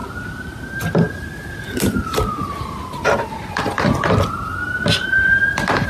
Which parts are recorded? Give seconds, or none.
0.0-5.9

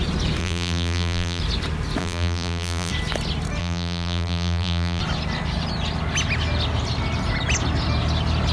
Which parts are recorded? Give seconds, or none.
0.0-0.4; 1.4-2.0; 2.9-3.6; 5.0-8.5

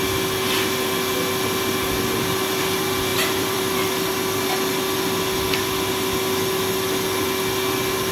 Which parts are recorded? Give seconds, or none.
0.0-3.1; 3.6-8.1

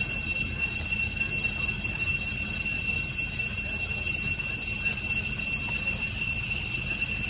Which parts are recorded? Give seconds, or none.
0.0-2.1; 5.1-7.3

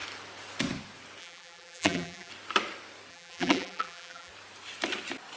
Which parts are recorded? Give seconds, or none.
0.0-1.2; 2.3-3.1; 4.3-5.4